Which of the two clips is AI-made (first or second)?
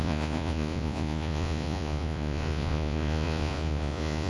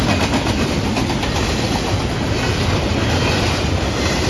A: first